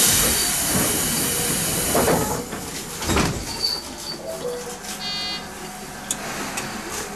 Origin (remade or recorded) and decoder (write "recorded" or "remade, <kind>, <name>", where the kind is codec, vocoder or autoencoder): recorded